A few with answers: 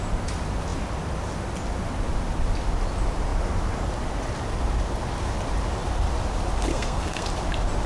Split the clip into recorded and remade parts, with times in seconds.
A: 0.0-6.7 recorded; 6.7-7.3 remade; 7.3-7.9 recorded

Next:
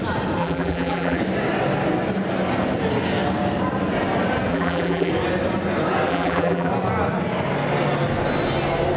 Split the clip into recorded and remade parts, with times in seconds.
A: 0.0-0.4 recorded; 0.4-1.2 remade; 1.2-4.5 recorded; 4.5-5.1 remade; 5.1-6.1 recorded; 6.1-6.7 remade; 6.7-9.0 recorded

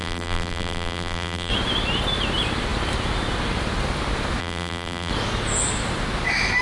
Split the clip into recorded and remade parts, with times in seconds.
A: 0.0-1.5 remade; 1.5-4.4 recorded; 4.4-5.1 remade; 5.1-6.6 recorded

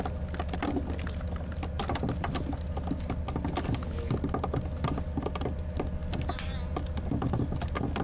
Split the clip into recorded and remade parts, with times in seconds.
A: 0.0-8.0 recorded

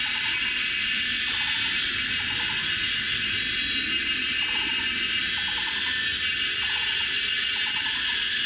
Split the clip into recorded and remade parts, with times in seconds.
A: 0.0-8.5 recorded

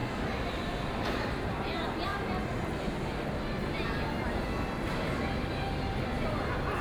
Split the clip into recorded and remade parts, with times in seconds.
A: 0.0-1.6 remade; 1.6-6.8 recorded

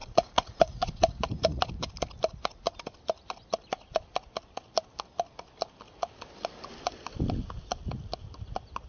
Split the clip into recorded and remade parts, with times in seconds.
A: 0.0-1.6 remade; 1.6-8.9 recorded

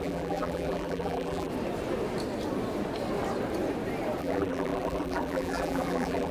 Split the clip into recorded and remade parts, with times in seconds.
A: 0.0-1.5 remade; 1.5-4.2 recorded; 4.2-6.3 remade